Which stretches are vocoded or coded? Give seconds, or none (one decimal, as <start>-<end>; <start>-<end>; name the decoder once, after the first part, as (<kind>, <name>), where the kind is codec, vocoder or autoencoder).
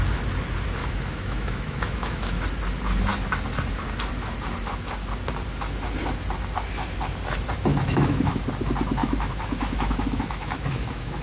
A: 0.8-2.4 (autoencoder, DAC-VAE); 7.7-8.4; 9.0-11.2